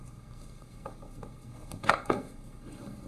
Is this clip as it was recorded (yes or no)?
no